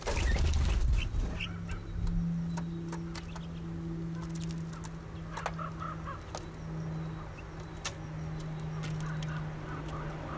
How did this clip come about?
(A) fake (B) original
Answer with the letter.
B